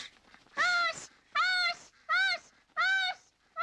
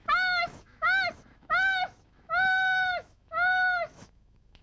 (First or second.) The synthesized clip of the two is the second